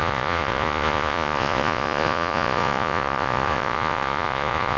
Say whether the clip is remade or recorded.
remade